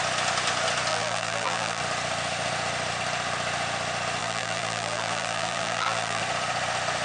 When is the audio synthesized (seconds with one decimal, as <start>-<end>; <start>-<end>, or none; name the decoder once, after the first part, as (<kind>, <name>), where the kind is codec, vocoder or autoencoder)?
0.9-1.8 (vocoder, BigVGAN v2); 4.2-6.2